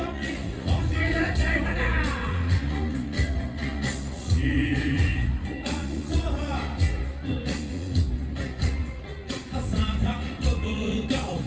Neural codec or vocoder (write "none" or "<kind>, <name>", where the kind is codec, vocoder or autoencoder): vocoder, Vocos